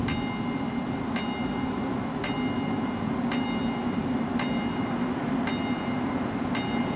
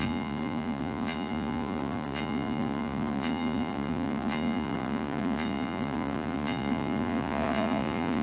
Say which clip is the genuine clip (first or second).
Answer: first